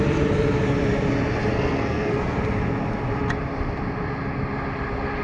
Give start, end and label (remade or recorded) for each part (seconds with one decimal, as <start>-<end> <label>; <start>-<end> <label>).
0.0-1.5 recorded; 1.5-2.4 remade; 2.4-5.2 recorded